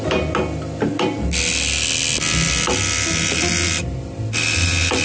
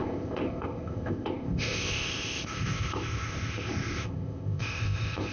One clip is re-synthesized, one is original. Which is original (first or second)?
first